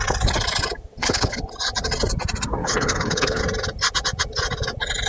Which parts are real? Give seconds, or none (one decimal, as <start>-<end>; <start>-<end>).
0.0-1.0; 1.5-2.6; 3.4-5.1